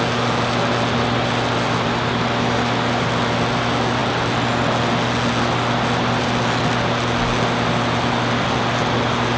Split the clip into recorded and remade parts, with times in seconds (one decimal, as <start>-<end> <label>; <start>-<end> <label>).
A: 0.0-9.4 recorded